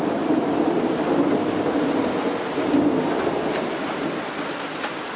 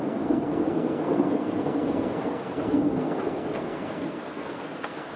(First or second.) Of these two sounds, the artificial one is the second